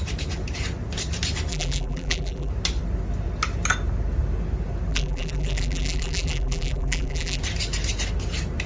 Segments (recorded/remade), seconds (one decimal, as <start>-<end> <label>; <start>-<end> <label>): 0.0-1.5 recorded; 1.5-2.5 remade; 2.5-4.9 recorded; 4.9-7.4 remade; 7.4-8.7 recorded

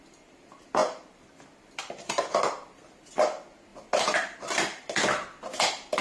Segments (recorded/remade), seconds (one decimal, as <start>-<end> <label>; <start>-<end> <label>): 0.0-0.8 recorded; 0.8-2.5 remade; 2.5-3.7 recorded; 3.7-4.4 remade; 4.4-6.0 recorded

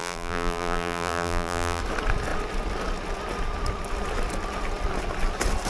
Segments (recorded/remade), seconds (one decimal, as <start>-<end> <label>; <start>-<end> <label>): 0.0-1.8 remade; 1.8-5.7 recorded

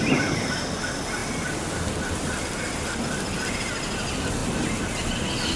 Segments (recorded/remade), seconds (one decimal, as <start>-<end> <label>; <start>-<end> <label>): 0.0-5.6 recorded

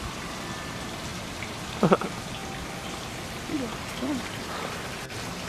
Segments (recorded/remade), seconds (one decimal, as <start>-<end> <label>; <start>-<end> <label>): 0.0-2.4 recorded; 2.4-5.5 remade